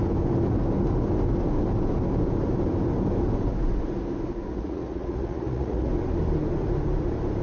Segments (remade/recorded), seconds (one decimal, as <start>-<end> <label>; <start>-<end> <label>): 0.0-4.5 recorded; 4.5-5.9 remade; 5.9-7.4 recorded